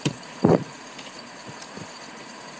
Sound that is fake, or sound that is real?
fake